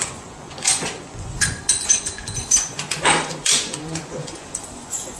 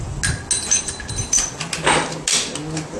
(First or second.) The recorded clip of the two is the second